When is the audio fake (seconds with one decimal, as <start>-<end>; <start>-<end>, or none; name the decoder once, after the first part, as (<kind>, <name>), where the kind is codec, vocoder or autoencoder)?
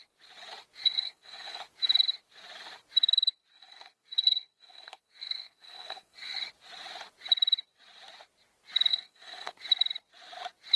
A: 0.8-1.6 (codec, SNAC); 3.5-6.4; 8.9-9.5